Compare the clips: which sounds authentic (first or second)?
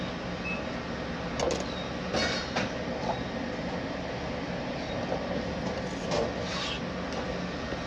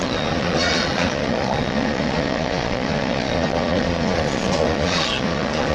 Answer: first